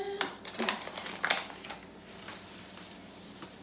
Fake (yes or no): no